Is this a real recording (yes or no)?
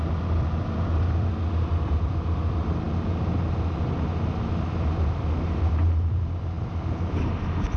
yes